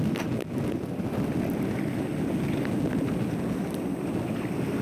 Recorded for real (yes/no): yes